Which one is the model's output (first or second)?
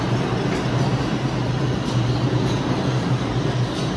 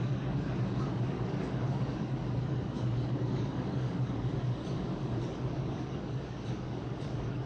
second